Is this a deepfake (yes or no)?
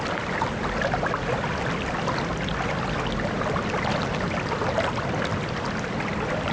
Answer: no